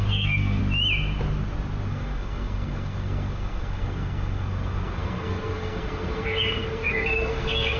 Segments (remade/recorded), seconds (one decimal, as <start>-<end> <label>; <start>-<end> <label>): 0.0-0.6 remade; 0.6-1.9 recorded; 1.9-7.8 remade